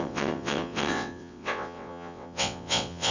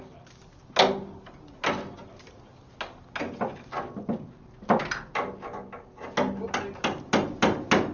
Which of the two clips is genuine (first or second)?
second